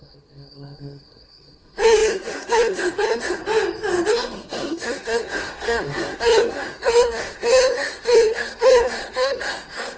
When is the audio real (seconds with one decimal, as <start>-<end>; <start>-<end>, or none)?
3.4-4.1